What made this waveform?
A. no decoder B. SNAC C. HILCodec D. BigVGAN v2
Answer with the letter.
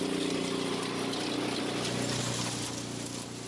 A